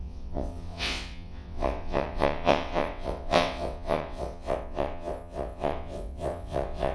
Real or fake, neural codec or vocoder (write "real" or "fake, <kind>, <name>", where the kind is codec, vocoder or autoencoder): fake, vocoder, WaveNeXt